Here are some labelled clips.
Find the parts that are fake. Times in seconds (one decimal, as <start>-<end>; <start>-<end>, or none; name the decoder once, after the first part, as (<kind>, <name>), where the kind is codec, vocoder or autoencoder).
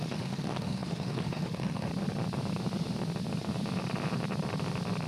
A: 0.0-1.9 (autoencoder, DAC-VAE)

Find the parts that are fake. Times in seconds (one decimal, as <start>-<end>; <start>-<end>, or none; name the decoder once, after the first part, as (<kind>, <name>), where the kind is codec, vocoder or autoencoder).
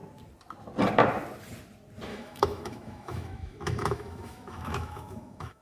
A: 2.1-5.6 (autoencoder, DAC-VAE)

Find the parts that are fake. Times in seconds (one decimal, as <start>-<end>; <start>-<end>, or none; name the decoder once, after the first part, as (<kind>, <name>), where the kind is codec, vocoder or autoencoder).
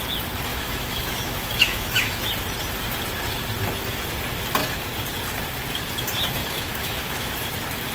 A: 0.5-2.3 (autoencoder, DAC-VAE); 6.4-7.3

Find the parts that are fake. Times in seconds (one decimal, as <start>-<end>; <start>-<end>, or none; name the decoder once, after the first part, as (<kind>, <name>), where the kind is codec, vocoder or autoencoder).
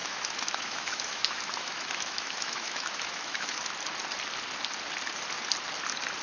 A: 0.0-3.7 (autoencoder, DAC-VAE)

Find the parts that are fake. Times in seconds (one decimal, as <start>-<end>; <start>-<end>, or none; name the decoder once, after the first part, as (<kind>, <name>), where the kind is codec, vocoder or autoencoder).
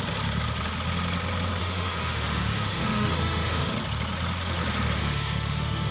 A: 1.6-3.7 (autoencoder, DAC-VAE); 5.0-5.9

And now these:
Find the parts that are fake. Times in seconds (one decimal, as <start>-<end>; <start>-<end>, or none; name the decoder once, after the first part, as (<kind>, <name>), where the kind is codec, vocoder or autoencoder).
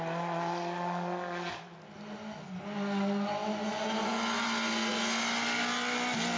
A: none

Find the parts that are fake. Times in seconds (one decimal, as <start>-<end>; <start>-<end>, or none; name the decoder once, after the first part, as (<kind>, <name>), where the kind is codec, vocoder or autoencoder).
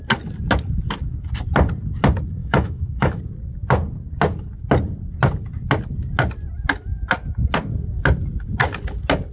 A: 2.4-3.2 (autoencoder, DAC-VAE)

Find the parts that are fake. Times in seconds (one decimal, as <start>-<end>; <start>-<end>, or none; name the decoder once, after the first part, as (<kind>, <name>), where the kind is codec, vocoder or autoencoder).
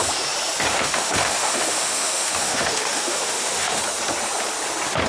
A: 0.7-3.8 (autoencoder, DAC-VAE)